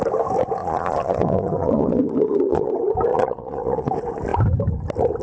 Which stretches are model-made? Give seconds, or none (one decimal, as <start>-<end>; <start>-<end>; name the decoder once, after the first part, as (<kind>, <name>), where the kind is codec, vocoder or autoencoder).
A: 0.6-2.7 (vocoder, Vocos); 3.1-3.9